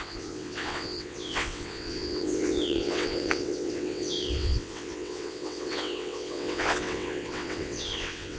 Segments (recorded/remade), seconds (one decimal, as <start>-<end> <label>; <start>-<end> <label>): 0.0-8.4 remade